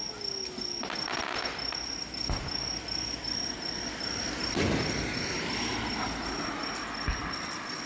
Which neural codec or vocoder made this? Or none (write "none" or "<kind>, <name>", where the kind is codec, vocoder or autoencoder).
none